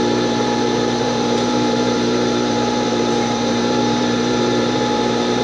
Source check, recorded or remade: remade